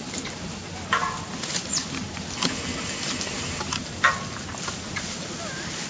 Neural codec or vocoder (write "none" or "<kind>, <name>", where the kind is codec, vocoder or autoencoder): none